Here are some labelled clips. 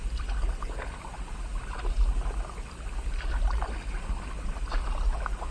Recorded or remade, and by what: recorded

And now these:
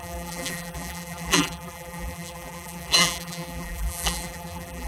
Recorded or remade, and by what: remade, vocoder, BigVGAN v2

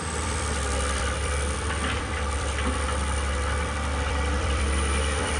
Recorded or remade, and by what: remade, vocoder, BigVGAN v2